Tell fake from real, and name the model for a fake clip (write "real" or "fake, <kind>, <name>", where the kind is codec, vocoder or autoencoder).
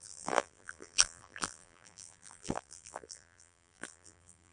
fake, vocoder, BigVGAN v2